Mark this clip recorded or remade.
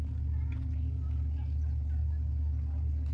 recorded